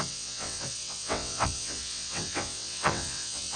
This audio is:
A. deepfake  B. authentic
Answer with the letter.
A